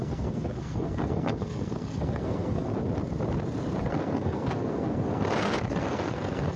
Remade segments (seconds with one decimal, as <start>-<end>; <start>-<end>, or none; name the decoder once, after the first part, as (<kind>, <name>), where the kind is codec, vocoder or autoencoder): 0.0-2.7 (codec, SNAC); 3.8-6.6